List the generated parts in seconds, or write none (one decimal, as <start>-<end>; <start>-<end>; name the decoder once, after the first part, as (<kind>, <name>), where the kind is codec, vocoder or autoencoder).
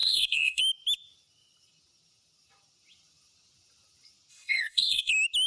0.0-0.6 (codec, SNAC); 4.3-5.1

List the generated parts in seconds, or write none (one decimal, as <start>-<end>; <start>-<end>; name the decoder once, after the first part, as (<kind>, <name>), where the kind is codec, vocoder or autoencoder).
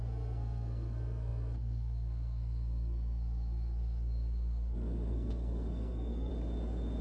0.0-6.3 (codec, SNAC)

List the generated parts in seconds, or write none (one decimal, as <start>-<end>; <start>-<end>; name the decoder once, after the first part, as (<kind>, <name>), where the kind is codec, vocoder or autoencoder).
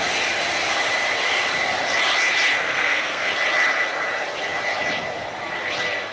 2.6-3.3 (codec, SNAC)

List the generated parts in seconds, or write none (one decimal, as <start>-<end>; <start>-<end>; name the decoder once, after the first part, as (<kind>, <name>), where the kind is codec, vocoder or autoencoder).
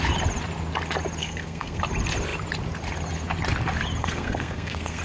1.2-1.8 (codec, SNAC); 4.0-5.0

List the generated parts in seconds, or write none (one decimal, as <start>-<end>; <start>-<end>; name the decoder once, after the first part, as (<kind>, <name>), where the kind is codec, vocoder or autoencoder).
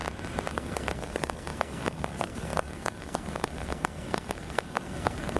0.5-5.4 (codec, SNAC)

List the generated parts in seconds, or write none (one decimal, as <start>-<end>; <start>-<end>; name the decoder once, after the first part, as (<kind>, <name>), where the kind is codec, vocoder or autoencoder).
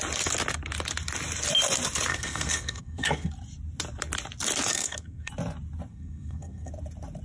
2.1-3.3 (codec, SNAC); 4.7-5.3; 5.9-6.7